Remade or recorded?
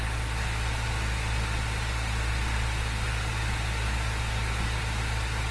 recorded